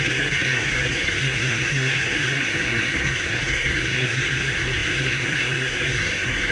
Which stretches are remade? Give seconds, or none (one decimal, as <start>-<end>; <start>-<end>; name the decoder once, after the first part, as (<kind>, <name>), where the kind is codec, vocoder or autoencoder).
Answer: 0.0-6.5 (codec, SNAC)